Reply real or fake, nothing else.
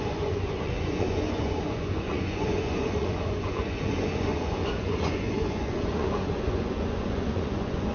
fake